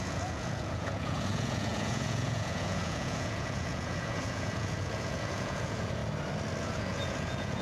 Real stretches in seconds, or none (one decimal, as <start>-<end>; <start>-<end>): 6.0-6.6